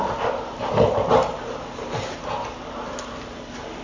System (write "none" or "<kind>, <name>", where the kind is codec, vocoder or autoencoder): none